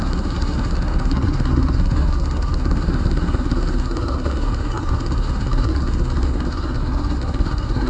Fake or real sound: fake